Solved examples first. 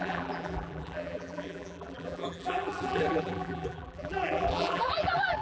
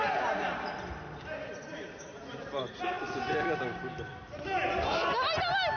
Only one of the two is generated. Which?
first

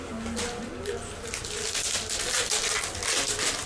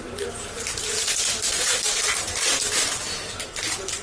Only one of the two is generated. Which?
second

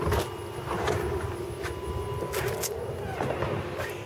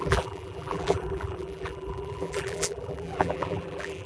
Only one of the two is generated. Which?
second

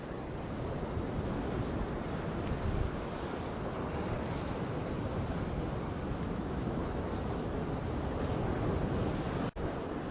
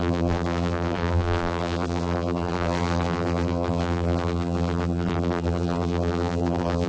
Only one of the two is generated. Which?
second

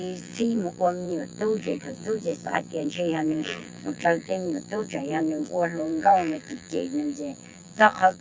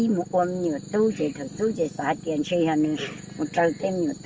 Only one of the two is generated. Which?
first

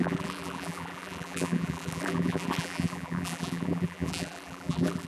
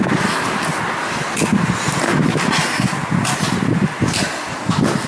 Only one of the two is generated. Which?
first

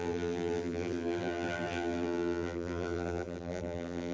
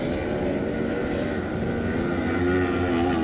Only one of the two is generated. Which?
first